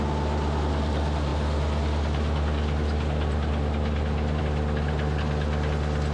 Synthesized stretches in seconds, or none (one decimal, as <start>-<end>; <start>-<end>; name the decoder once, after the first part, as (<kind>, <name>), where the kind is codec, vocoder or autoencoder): none